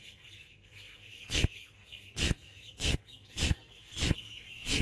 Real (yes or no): no